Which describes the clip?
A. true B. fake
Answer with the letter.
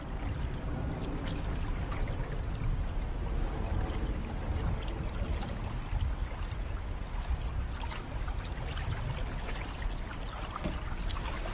A